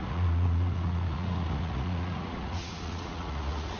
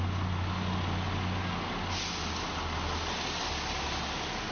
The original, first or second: second